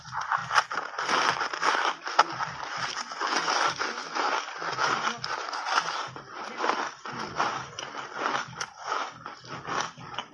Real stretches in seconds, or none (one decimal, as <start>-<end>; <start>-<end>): 0.0-10.3